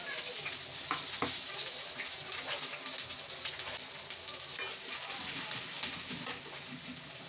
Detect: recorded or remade recorded